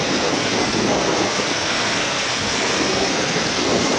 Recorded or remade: remade